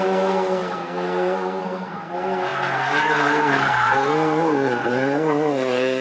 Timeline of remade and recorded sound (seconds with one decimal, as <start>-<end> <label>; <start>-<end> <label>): 0.0-6.0 remade